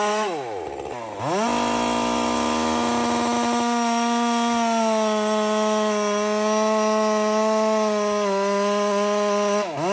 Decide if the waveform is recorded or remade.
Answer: recorded